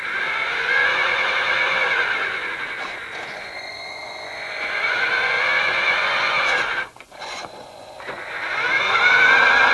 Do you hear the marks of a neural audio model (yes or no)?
yes